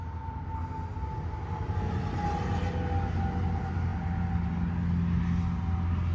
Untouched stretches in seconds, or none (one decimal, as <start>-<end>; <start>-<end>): 0.0-6.1